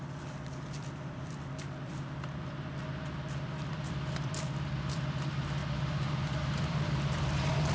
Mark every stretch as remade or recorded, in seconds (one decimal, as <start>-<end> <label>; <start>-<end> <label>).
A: 0.0-5.6 remade; 5.6-6.6 recorded; 6.6-7.7 remade